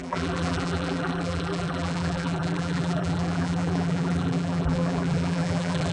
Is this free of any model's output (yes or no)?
no